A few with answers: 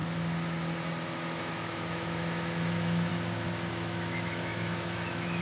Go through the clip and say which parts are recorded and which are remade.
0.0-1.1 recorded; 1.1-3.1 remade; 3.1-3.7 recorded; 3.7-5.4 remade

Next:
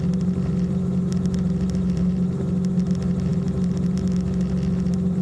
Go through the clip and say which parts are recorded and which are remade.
0.0-5.2 recorded

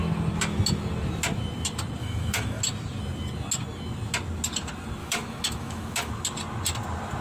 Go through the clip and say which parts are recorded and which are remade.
0.0-2.0 recorded; 2.0-2.6 remade; 2.6-5.0 recorded; 5.0-6.1 remade; 6.1-7.2 recorded

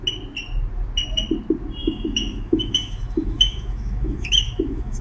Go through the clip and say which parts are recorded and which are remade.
0.0-1.8 recorded; 1.8-5.0 remade

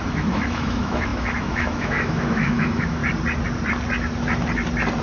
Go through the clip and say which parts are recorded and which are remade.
0.0-3.0 remade; 3.0-5.0 recorded